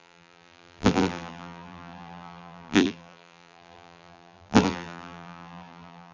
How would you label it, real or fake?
fake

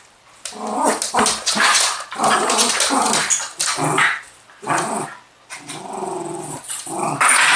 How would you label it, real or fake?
real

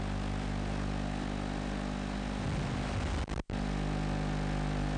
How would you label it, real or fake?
real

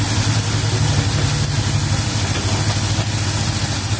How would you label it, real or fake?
real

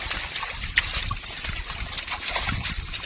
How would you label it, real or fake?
fake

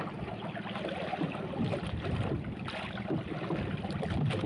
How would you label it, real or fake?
fake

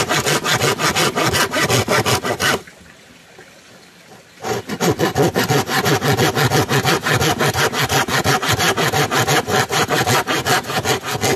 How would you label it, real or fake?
real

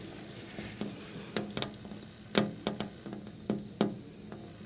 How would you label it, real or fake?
real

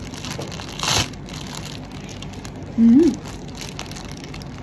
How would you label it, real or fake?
real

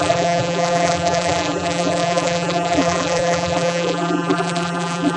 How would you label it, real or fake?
fake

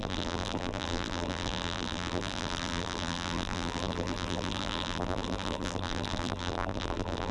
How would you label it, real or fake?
fake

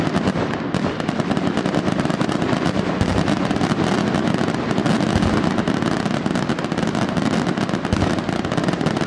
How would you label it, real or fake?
real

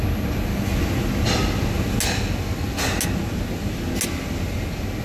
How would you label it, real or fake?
real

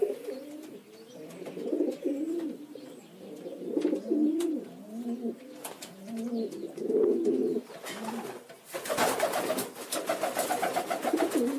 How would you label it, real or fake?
real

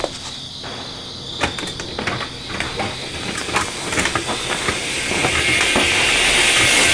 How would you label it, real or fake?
real